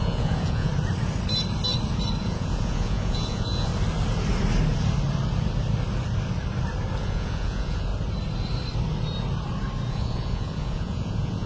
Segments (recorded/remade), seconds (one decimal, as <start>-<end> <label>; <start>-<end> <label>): 0.0-0.7 remade; 0.7-2.2 recorded; 2.2-3.7 remade; 3.7-7.0 recorded; 7.0-7.9 remade; 7.9-9.9 recorded; 9.9-11.5 remade